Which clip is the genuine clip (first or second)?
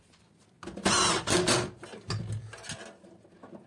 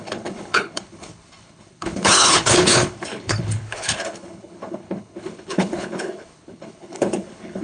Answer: first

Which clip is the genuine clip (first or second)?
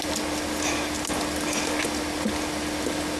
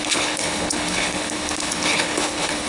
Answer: first